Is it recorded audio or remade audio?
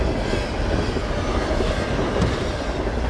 recorded